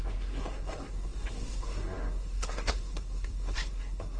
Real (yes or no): no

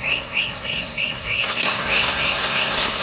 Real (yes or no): no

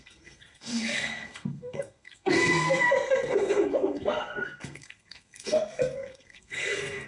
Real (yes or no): no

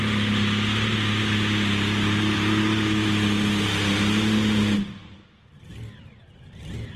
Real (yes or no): yes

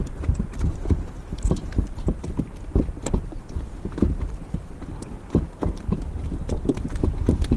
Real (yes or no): yes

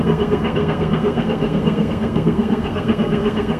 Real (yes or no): no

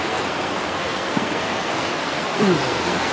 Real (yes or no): no